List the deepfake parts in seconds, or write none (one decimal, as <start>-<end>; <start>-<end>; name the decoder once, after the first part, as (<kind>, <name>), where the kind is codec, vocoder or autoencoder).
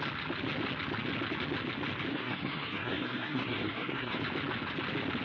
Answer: 2.1-4.2 (codec, SNAC)